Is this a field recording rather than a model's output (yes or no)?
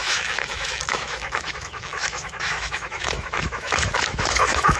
no